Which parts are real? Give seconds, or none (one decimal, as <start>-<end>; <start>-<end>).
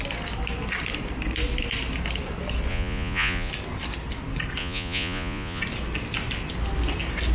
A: 0.0-2.7; 3.5-4.6; 5.6-7.3